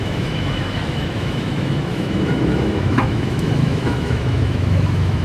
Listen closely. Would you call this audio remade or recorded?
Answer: remade